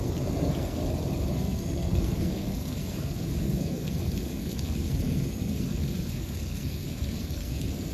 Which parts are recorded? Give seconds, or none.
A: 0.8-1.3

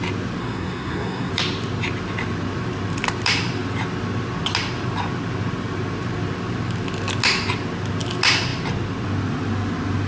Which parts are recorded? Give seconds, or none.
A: 0.0-0.4; 1.3-10.1

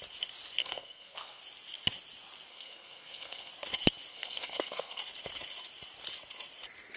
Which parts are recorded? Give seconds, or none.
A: 0.0-0.6; 1.4-2.5; 3.5-4.1; 5.0-7.0

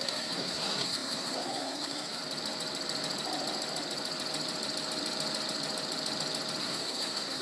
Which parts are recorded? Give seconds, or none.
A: 2.2-6.6